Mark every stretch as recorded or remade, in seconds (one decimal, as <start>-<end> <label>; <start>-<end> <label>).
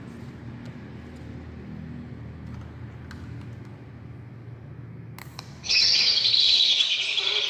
0.0-5.2 recorded; 5.2-7.0 remade; 7.0-7.5 recorded